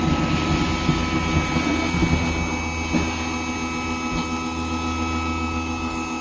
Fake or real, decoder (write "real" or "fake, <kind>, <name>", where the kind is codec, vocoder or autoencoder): real